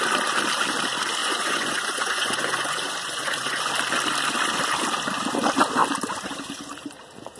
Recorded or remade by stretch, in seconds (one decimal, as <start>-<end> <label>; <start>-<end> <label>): 0.0-1.2 recorded; 1.2-3.6 remade; 3.6-7.4 recorded